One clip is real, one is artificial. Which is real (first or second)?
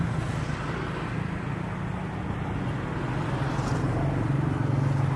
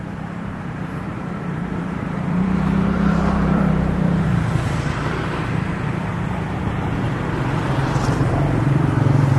first